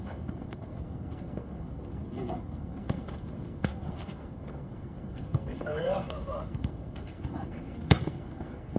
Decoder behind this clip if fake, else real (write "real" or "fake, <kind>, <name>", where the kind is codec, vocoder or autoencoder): fake, codec, SNAC